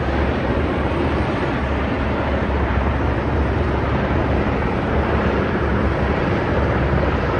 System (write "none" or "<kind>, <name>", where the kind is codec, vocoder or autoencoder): vocoder, BigVGAN v2